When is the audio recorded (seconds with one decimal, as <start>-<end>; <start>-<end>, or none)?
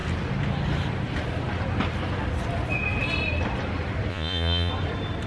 0.0-4.1; 4.7-5.3